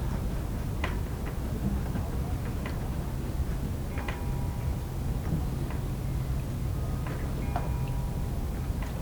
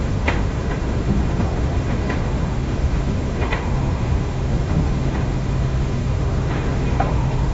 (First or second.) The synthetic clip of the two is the second